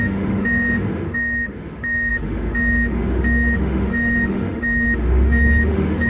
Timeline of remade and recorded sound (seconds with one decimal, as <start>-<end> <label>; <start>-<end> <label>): 0.0-6.1 remade